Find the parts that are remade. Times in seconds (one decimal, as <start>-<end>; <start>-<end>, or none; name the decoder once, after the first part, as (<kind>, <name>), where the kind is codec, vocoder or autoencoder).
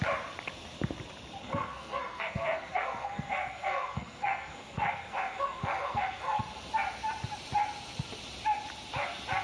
1.4-6.4 (codec, SNAC)